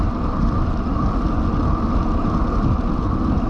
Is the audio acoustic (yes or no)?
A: yes